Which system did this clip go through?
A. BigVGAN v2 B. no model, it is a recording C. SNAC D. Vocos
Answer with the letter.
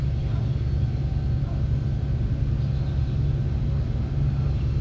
B